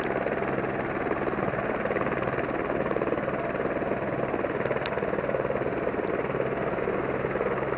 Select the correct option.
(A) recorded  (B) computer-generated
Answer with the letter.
A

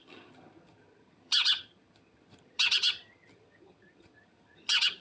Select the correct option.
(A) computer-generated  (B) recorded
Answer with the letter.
A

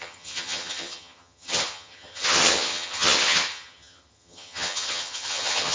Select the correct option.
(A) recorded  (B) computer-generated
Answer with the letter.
B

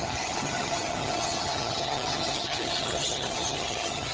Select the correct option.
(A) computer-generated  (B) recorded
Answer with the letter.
A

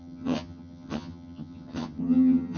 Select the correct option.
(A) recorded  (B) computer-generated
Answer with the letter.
B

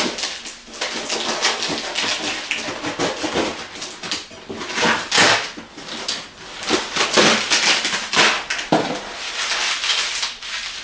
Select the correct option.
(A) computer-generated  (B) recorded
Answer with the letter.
B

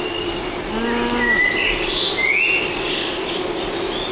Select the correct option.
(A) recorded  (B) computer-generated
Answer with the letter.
A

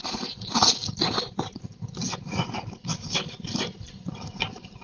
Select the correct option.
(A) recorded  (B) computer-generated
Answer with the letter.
A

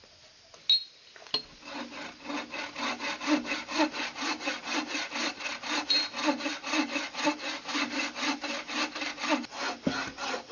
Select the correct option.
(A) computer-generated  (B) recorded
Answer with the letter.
B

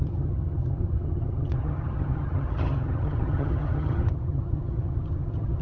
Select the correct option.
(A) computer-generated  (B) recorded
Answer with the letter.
A